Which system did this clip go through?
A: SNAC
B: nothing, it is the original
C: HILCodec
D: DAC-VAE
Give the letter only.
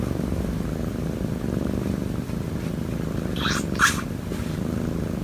B